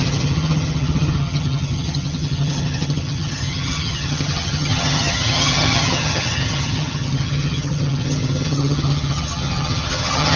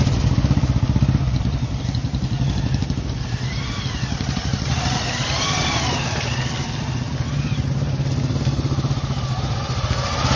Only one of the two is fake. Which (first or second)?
first